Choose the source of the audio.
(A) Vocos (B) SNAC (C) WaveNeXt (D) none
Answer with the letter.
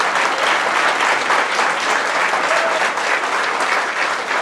D